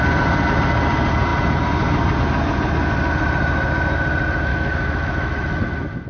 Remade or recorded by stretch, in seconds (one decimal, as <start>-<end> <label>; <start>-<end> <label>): 0.0-4.5 recorded; 4.5-5.6 remade; 5.6-6.1 recorded